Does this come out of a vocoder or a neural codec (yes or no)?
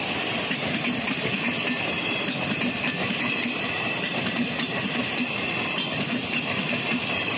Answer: no